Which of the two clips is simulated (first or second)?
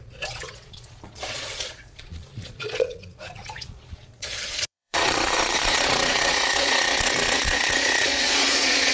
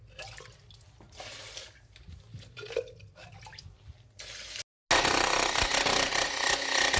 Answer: first